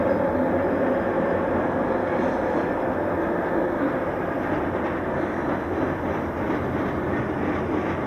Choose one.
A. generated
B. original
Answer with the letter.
B